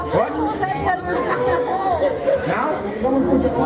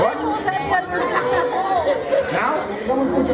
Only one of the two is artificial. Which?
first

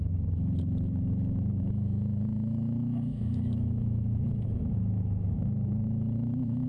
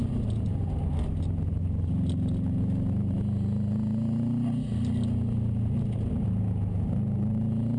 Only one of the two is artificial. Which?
first